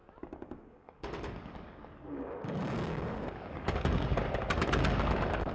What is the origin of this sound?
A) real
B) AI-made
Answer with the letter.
B